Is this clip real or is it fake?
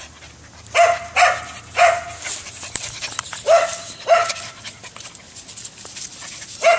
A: real